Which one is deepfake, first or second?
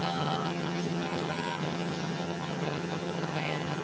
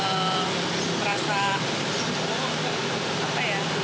first